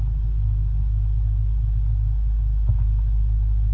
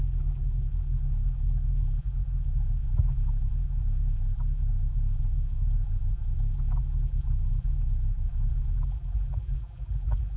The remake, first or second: second